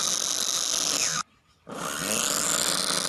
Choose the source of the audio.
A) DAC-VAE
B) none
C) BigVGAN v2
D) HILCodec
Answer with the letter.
B